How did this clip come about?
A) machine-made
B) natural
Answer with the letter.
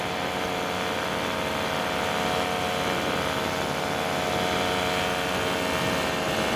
B